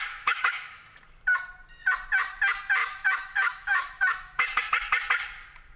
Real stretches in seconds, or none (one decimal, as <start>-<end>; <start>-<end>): 1.0-2.8; 4.6-5.8